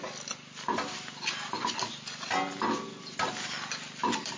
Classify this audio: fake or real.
real